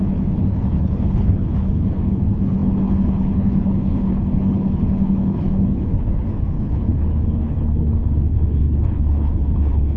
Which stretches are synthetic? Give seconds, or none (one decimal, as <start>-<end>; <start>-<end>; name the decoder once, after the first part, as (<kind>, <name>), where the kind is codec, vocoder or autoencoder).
0.0-10.0 (codec, HILCodec)